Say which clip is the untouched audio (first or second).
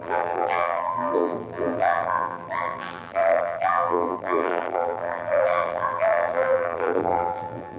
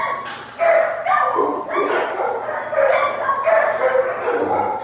second